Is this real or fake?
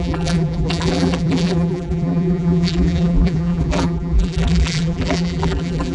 fake